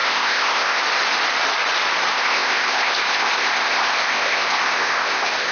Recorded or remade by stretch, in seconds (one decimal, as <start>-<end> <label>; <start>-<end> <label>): 0.0-0.8 remade; 0.8-2.1 recorded; 2.1-5.5 remade